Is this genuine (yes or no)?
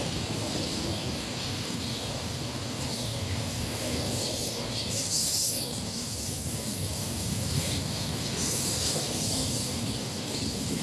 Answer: no